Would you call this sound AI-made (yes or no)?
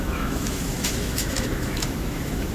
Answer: yes